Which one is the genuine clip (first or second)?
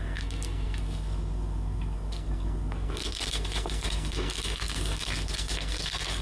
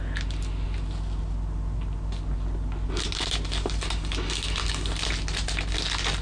second